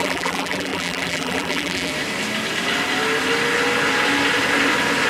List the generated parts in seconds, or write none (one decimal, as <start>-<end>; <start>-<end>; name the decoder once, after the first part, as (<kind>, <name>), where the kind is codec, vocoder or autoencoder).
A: 0.0-1.9 (vocoder, BigVGAN v2)